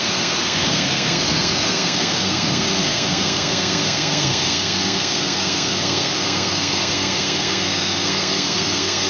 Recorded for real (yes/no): no